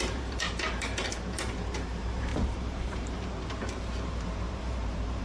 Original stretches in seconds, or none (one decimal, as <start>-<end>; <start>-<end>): none

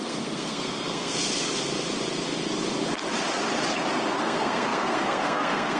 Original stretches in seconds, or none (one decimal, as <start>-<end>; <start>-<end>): 1.2-4.2

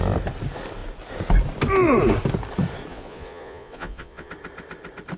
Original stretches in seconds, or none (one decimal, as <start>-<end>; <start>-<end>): 0.0-2.9; 4.3-5.2

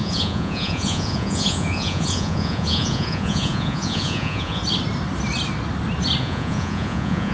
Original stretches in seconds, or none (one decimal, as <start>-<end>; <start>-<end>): 4.6-6.2

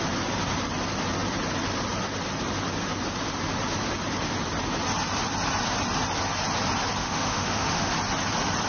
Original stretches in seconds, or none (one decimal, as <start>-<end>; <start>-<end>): 0.0-7.0; 7.9-8.7

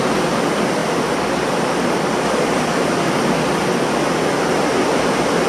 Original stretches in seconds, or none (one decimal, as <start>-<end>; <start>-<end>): 0.0-5.5

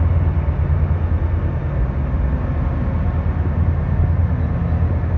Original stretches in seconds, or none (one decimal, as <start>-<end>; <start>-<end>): 0.0-5.2